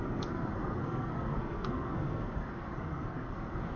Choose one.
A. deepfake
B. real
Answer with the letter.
A